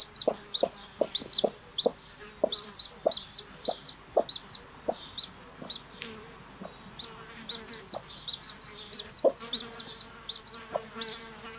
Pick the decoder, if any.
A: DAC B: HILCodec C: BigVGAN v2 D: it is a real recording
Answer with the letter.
D